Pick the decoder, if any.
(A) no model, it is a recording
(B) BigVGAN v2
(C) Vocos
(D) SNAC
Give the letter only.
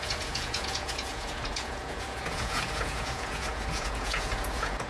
C